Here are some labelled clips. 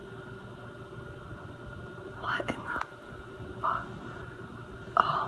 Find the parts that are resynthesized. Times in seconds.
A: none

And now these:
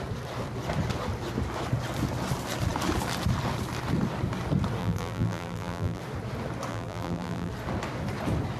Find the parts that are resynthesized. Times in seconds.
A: 4.8-6.0 (vocoder, BigVGAN v2); 6.7-7.5

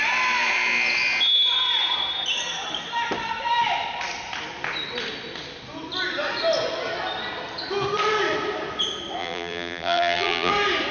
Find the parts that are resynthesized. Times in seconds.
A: 9.2-10.5 (vocoder, BigVGAN v2)

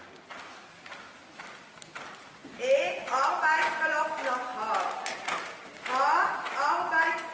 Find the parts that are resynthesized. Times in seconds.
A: none

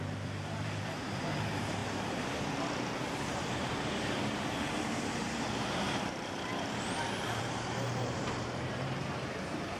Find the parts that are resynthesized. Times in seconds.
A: 0.0-1.8 (vocoder, BigVGAN v2); 3.0-6.5; 7.4-9.8